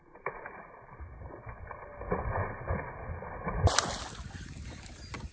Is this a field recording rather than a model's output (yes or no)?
yes